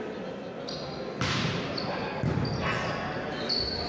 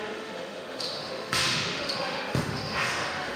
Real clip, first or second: first